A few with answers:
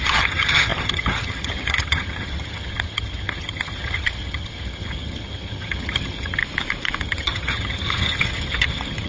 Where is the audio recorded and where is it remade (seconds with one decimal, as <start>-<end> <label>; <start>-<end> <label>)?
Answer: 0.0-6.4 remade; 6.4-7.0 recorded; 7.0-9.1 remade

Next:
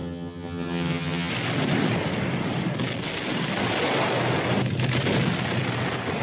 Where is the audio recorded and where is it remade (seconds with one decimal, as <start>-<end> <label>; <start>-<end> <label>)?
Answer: 0.0-1.3 remade; 1.3-6.2 recorded

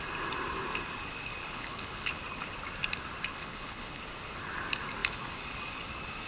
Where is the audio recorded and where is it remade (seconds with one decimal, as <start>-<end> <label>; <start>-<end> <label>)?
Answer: 0.0-1.4 recorded; 1.4-2.2 remade; 2.2-3.3 recorded; 3.3-4.0 remade; 4.0-6.3 recorded

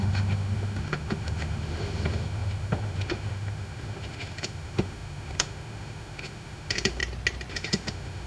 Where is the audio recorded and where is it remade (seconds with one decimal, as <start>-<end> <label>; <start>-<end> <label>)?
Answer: 0.0-7.0 remade; 7.0-7.5 recorded; 7.5-8.3 remade